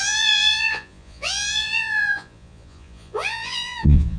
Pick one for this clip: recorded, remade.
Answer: remade